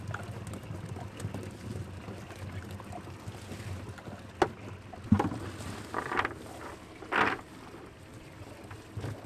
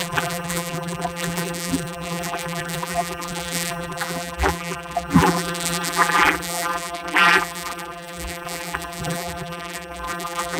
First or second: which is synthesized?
second